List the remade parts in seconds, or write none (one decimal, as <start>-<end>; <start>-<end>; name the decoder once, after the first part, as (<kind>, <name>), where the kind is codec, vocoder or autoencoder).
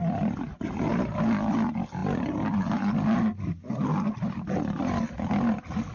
none